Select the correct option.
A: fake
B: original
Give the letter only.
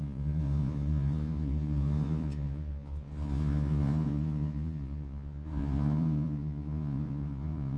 A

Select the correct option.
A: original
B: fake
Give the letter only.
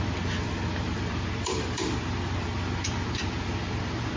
A